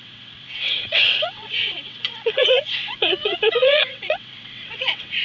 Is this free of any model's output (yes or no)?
no